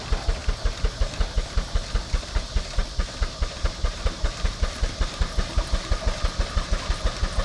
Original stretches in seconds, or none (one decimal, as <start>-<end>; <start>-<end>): 0.0-7.4